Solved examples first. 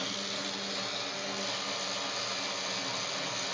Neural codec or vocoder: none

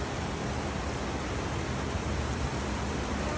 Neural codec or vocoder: none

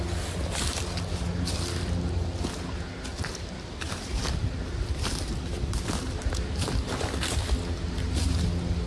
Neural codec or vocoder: none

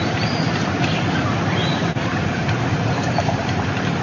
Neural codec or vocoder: vocoder, BigVGAN v2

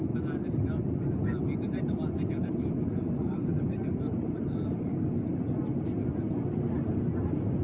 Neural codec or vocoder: none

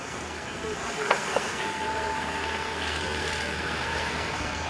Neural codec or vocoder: codec, SNAC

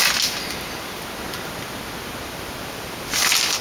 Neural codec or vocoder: none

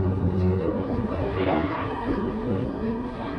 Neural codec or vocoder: codec, SNAC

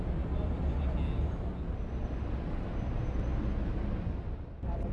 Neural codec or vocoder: none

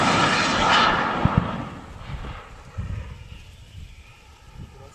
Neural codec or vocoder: none